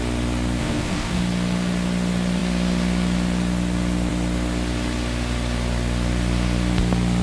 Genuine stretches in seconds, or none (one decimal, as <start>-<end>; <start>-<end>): 0.0-0.6; 1.2-7.2